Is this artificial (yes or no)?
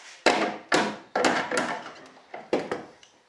no